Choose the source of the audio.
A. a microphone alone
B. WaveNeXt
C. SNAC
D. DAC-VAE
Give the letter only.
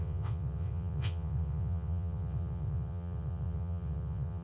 B